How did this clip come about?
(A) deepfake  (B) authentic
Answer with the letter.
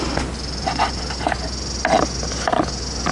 B